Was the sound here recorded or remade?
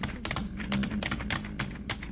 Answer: recorded